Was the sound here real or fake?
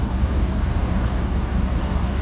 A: fake